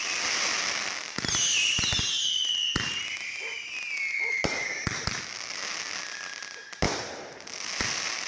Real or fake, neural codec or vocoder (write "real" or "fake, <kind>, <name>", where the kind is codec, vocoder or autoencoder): real